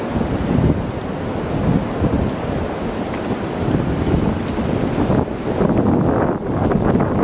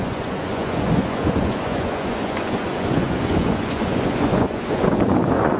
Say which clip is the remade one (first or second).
second